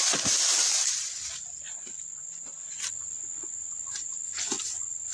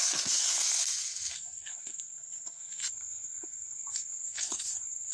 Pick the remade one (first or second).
second